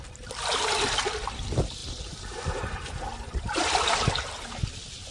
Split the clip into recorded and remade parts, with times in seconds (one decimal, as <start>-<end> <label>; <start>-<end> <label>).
0.0-5.1 recorded

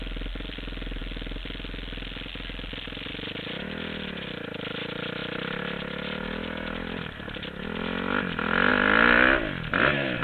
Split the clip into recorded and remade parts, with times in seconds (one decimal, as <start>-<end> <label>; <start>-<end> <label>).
0.0-10.2 recorded

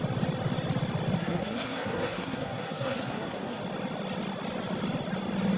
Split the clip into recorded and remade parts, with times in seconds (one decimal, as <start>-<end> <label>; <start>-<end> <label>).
0.0-1.2 recorded; 1.2-3.6 remade; 3.6-5.6 recorded